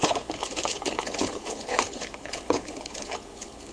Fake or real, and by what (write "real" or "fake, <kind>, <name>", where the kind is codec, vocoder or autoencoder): fake, codec, HILCodec